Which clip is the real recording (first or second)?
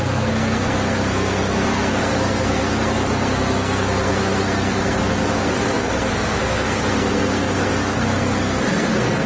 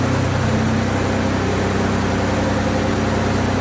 second